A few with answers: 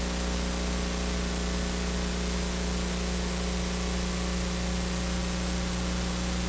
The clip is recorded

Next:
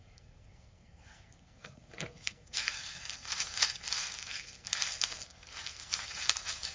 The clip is remade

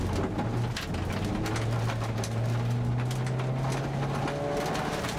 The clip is recorded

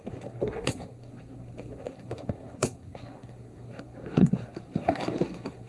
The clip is remade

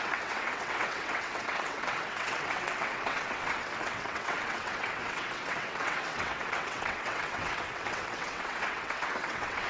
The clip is remade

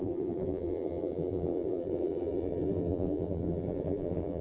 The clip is remade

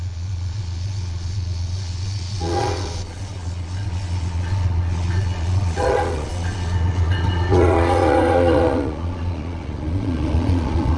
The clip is remade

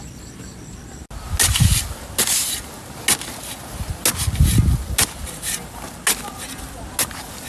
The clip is recorded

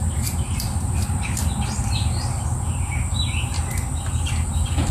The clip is recorded